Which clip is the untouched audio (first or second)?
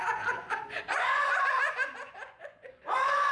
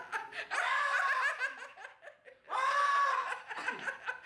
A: second